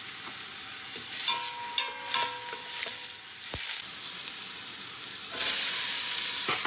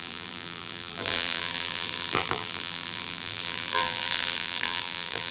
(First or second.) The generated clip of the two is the second